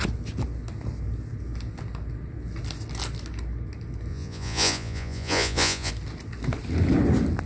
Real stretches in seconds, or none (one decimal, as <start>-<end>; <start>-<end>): 0.0-4.1; 5.9-7.5